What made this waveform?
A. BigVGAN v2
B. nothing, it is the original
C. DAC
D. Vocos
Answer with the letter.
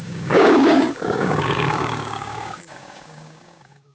C